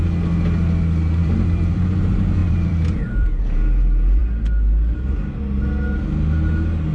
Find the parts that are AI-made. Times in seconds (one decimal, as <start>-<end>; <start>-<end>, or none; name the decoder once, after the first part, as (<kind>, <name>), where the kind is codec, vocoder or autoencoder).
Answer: 1.2-1.8 (vocoder, BigVGAN v2); 2.4-3.4